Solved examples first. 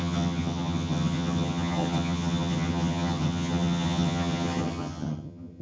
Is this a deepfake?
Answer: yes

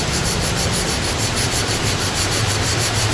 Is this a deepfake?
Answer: yes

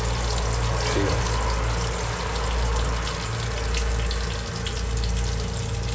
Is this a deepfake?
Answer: no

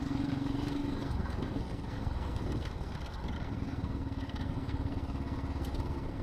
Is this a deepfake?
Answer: yes